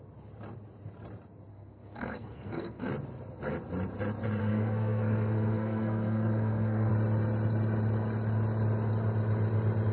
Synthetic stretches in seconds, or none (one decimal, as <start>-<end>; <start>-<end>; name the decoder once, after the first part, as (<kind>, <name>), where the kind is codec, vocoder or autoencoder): 1.5-2.9 (codec, SNAC); 4.4-6.9